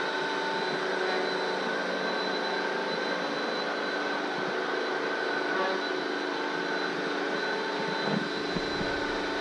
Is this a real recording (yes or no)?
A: yes